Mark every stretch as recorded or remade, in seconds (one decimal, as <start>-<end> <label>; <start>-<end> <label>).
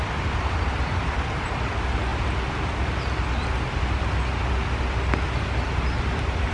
0.0-6.5 recorded